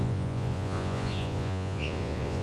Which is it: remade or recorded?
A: remade